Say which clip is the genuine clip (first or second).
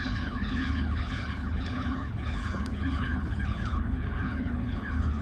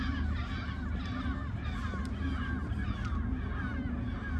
second